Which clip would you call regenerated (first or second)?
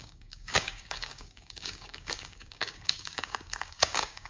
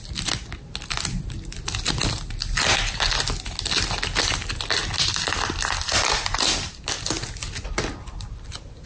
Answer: first